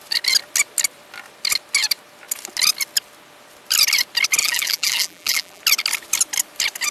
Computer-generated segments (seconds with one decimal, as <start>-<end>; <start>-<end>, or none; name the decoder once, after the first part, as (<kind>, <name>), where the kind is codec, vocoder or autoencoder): 4.4-5.6 (vocoder, BigVGAN v2)